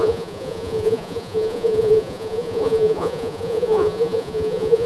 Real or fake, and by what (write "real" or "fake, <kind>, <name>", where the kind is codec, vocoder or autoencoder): fake, vocoder, Vocos